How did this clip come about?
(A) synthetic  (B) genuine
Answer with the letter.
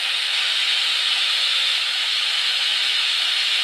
A